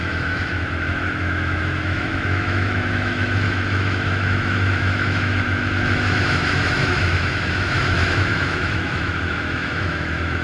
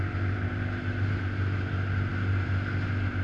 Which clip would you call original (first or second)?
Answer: second